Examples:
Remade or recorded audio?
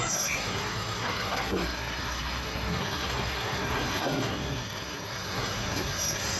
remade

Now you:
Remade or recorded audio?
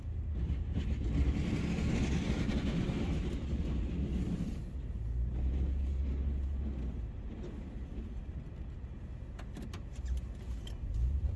recorded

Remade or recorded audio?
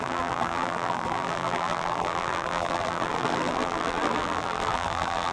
remade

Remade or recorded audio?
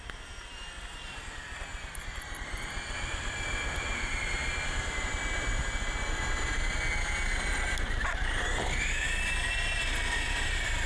recorded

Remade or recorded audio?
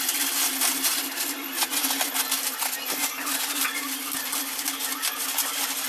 recorded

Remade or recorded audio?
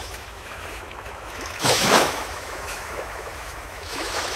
remade